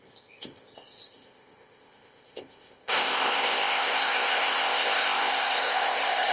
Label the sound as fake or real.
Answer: fake